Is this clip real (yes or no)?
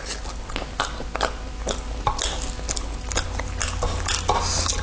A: yes